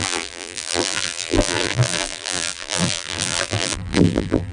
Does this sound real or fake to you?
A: fake